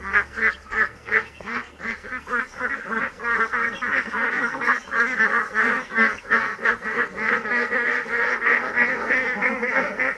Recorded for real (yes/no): no